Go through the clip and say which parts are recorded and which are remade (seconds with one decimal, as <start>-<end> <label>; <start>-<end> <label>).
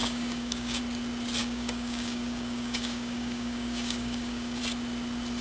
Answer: 0.0-0.8 remade; 0.8-1.4 recorded; 1.4-4.6 remade; 4.6-5.4 recorded